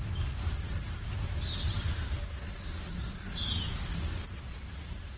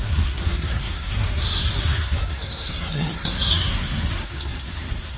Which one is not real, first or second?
second